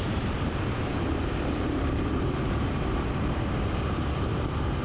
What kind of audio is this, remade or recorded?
remade